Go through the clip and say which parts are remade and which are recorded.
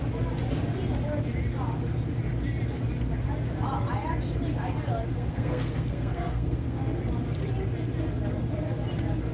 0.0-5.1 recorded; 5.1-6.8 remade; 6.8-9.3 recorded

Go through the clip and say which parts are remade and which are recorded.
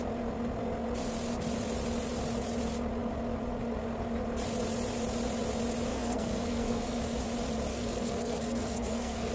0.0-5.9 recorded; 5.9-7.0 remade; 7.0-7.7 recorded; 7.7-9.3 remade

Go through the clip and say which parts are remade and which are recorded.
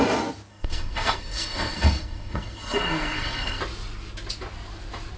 0.0-0.5 recorded; 0.5-3.6 remade; 3.6-5.2 recorded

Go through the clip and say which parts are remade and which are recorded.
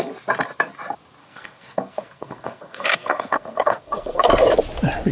0.0-1.2 recorded; 1.2-4.3 remade; 4.3-5.1 recorded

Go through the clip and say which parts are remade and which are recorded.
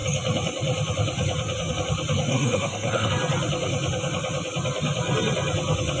0.0-2.3 recorded; 2.3-3.1 remade; 3.1-6.0 recorded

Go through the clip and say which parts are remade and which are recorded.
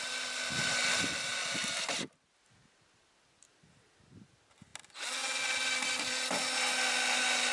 0.0-7.5 recorded